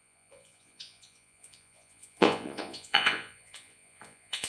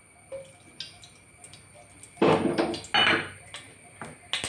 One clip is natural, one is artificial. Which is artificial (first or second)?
first